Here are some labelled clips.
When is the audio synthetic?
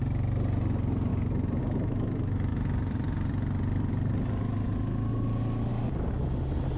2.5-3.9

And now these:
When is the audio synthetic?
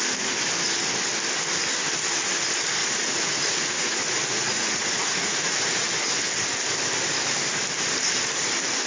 2.8-5.6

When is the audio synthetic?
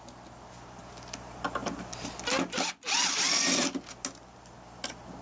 none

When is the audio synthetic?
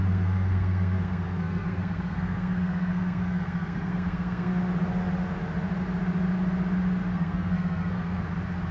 0.0-4.5; 7.1-8.2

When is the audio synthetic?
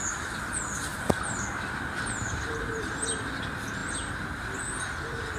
0.9-2.9